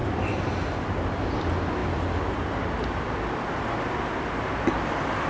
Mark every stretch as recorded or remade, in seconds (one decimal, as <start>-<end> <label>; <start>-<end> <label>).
0.0-5.3 recorded